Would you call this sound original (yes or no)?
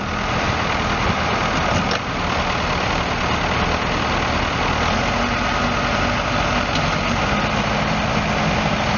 yes